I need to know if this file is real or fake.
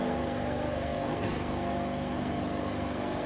fake